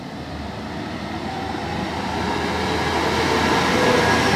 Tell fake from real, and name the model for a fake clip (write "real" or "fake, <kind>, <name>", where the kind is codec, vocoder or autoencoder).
real